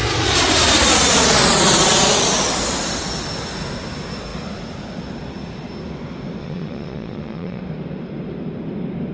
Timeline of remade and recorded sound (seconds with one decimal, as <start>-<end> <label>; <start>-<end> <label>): 0.0-6.4 recorded; 6.4-7.6 remade; 7.6-9.1 recorded